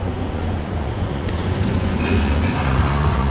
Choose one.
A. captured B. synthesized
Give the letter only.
B